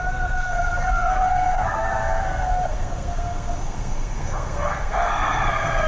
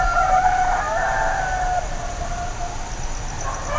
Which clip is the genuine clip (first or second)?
second